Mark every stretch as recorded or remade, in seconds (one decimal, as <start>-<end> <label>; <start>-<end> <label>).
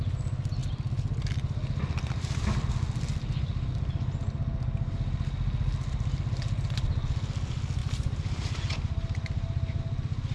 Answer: 0.0-7.8 recorded; 7.8-9.8 remade; 9.8-10.3 recorded